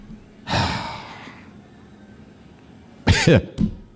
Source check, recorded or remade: recorded